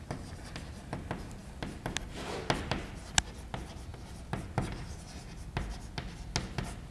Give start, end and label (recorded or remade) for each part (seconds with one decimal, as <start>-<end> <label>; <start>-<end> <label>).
0.0-6.9 recorded